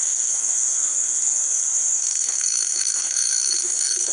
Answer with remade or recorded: remade